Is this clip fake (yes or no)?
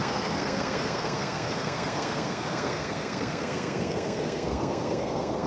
yes